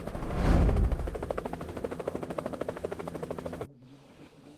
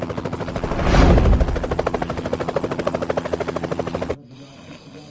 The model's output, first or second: first